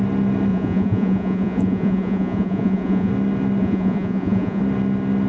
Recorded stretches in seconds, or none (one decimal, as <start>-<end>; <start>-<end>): 0.0-0.5; 3.1-3.6; 4.6-5.3